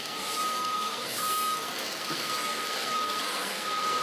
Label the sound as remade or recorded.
remade